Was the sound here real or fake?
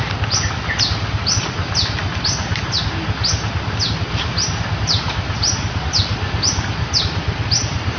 real